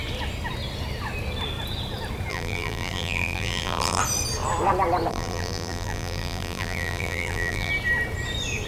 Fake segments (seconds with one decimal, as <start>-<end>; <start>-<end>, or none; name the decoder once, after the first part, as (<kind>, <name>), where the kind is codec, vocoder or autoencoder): 2.3-4.0 (vocoder, BigVGAN v2); 5.1-7.7

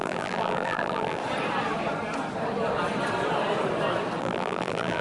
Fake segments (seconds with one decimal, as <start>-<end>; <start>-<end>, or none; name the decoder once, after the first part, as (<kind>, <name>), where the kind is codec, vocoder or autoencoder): 0.0-1.2 (vocoder, BigVGAN v2); 4.2-5.0

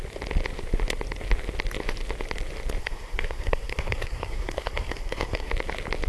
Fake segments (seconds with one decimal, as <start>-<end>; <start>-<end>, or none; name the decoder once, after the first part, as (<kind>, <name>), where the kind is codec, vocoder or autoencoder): 2.8-5.5 (codec, SNAC)

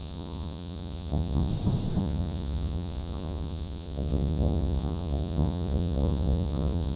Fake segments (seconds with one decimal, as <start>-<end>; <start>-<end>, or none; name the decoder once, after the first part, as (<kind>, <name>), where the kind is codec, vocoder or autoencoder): 0.0-1.5 (vocoder, Vocos); 2.0-7.0

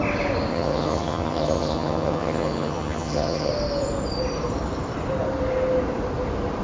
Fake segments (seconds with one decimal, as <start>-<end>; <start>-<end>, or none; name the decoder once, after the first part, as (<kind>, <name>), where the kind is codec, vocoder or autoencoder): 0.5-3.5 (vocoder, HiFi-GAN)

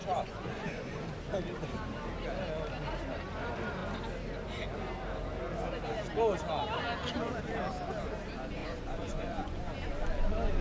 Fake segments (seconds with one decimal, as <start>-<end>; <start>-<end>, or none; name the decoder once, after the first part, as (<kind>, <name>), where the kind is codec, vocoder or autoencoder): 0.0-1.0 (vocoder, Vocos); 8.6-9.6